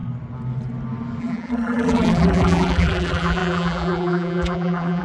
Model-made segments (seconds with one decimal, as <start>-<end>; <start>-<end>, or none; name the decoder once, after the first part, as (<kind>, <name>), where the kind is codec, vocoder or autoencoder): 1.2-5.0 (vocoder, BigVGAN v2)